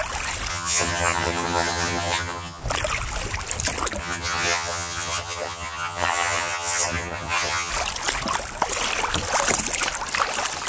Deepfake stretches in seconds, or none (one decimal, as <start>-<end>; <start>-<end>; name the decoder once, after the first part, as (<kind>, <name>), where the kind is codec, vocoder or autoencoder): 0.5-2.6 (vocoder, HiFi-GAN); 4.0-7.7